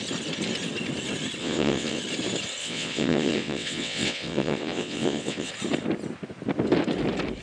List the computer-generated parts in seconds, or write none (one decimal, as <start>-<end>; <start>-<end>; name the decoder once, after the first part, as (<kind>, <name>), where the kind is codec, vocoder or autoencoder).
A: 1.4-2.0 (vocoder, WaveNeXt); 2.6-5.5